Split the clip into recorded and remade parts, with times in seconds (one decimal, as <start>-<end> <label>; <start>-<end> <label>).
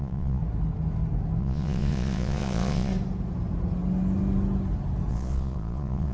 0.0-0.4 remade; 0.4-1.4 recorded; 1.4-2.9 remade; 2.9-5.1 recorded; 5.1-6.1 remade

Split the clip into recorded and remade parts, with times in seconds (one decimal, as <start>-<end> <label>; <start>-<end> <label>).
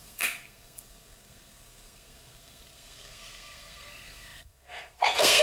0.0-5.4 remade